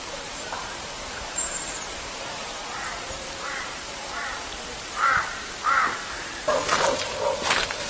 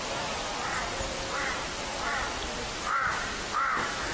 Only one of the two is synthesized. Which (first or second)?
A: first